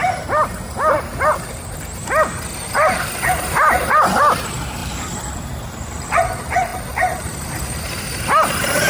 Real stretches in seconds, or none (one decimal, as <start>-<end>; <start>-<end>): 0.0-4.8; 6.2-6.7; 7.8-8.9